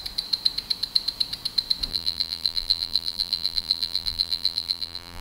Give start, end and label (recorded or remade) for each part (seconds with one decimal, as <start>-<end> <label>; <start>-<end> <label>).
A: 0.0-1.9 recorded; 1.9-5.2 remade